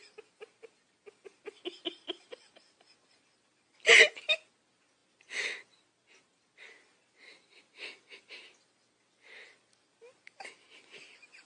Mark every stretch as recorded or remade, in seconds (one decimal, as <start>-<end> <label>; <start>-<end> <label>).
0.0-11.5 recorded